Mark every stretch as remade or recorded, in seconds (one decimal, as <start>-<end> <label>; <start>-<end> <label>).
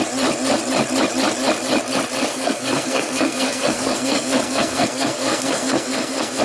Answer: 0.0-2.3 recorded; 2.3-6.4 remade